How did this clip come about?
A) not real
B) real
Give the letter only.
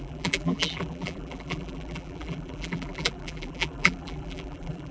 A